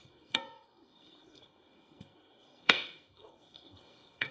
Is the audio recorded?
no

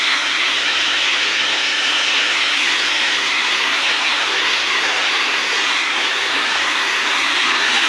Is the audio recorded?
no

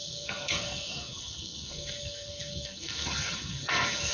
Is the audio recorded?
no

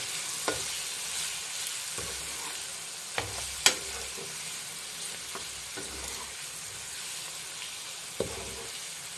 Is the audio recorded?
yes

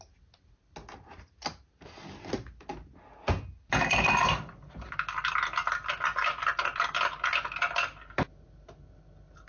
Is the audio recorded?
yes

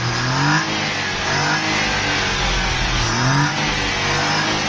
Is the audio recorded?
yes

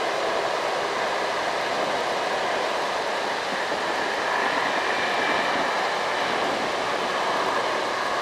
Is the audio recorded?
yes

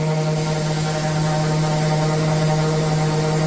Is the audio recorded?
yes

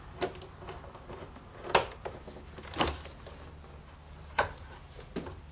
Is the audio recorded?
yes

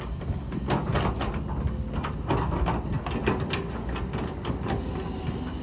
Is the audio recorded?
yes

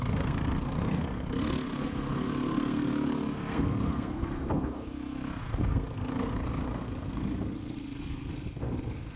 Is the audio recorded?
no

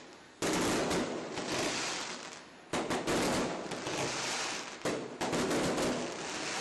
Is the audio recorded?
yes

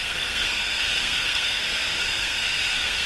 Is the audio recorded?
no